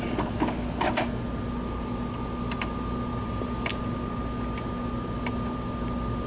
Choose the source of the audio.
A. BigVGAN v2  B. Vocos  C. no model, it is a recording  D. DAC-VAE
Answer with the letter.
C